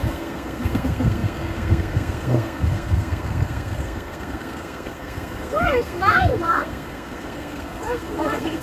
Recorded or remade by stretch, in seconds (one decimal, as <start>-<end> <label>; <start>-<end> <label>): 0.0-8.6 remade